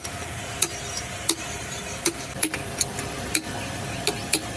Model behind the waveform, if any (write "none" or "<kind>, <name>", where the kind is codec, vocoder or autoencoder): none